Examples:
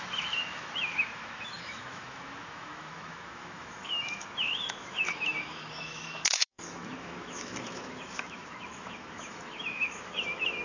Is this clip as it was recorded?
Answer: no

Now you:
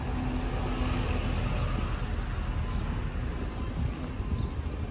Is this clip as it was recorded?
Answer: yes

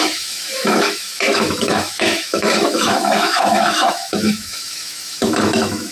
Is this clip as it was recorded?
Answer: no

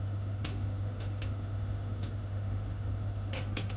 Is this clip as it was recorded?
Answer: no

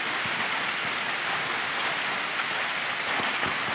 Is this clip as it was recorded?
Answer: yes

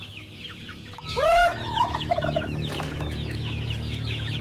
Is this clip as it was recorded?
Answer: no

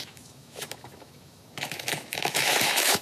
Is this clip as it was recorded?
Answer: no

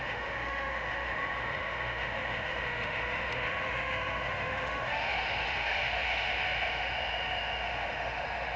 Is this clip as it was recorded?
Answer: no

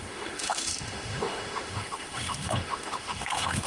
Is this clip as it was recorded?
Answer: no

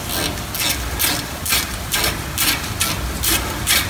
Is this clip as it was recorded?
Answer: yes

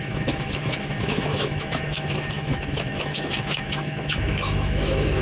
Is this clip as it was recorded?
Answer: no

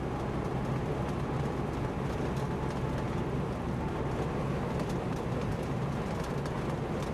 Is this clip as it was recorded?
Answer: yes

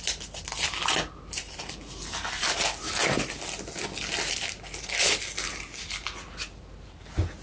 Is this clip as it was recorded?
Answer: yes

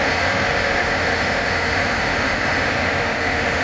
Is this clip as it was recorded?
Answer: no